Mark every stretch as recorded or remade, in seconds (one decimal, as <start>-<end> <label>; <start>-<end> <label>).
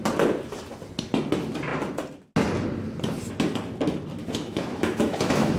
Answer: 0.0-4.2 recorded; 4.2-5.6 remade